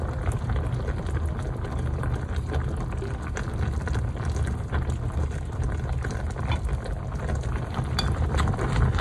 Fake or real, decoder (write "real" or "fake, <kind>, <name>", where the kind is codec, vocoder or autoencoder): real